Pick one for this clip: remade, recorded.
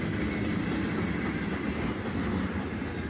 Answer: recorded